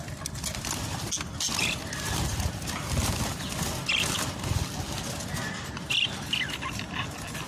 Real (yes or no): yes